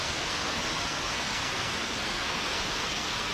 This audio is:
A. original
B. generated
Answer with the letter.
B